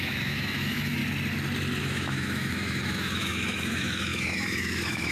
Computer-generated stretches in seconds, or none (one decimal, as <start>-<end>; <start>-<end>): 0.0-1.0; 1.8-5.1